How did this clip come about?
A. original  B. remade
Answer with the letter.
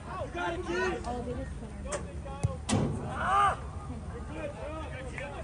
A